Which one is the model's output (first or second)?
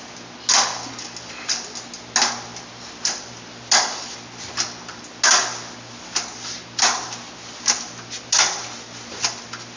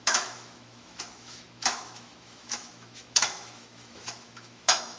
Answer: second